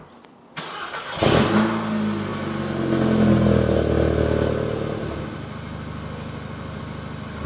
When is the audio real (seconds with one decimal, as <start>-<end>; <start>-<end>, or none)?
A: 0.0-7.5